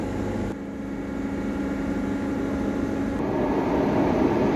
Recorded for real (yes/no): yes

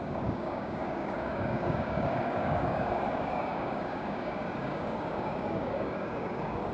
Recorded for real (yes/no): no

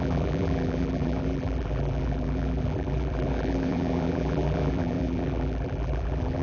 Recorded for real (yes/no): no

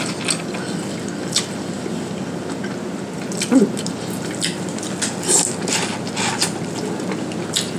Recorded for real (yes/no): yes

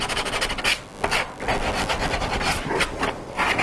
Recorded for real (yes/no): yes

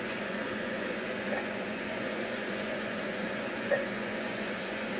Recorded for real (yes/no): no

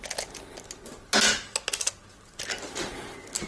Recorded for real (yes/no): yes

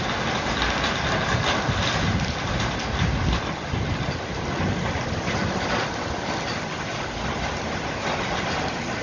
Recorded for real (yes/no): yes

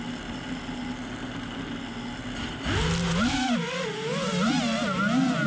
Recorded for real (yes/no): yes